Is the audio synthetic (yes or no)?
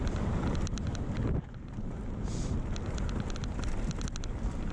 no